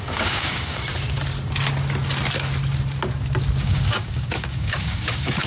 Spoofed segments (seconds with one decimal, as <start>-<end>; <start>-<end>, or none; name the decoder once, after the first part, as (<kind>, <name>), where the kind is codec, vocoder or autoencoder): 0.0-0.9 (codec, DAC); 3.6-5.5